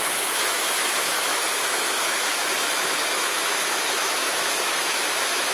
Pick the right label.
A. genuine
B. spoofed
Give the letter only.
B